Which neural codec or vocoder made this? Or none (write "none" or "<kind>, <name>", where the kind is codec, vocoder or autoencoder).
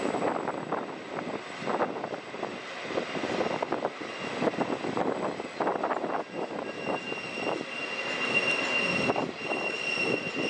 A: none